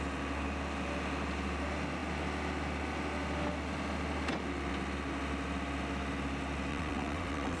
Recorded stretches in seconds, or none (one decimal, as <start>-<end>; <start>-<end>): 0.0-6.7